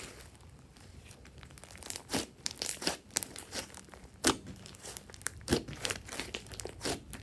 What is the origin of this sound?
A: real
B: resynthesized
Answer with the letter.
B